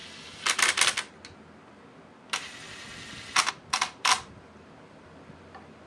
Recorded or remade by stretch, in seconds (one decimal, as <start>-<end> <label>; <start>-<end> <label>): 0.0-3.5 recorded; 3.5-5.9 remade